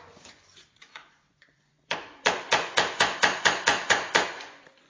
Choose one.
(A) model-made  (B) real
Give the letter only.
A